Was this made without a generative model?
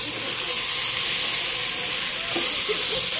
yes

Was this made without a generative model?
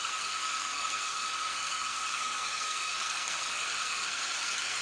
no